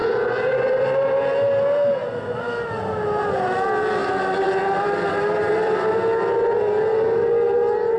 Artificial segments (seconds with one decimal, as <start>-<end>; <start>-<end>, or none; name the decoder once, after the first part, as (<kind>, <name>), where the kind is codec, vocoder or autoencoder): 0.0-0.9 (vocoder, BigVGAN v2); 4.0-5.9